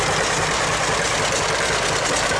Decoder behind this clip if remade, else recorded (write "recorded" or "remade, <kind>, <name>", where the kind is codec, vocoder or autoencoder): recorded